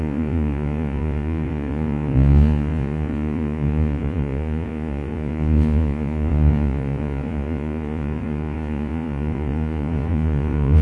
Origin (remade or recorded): remade